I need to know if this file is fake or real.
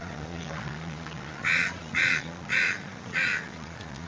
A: fake